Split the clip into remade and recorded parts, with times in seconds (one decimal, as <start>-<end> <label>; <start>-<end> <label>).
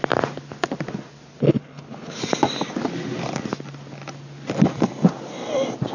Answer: 0.0-1.4 recorded; 1.4-2.2 remade; 2.2-5.9 recorded